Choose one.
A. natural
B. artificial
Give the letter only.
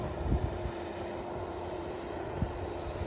B